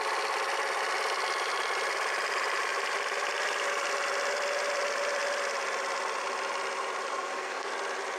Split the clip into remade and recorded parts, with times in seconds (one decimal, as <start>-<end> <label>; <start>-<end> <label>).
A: 0.0-7.1 recorded; 7.1-7.7 remade; 7.7-8.2 recorded